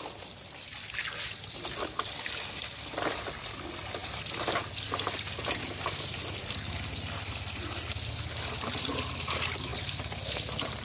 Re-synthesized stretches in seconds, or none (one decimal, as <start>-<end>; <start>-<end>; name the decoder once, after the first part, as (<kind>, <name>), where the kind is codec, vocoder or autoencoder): none